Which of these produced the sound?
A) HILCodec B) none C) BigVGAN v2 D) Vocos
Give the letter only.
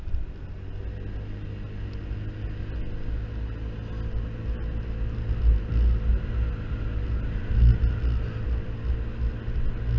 B